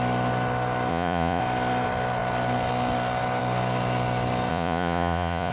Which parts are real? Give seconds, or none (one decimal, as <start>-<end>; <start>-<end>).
0.0-0.9; 1.4-4.5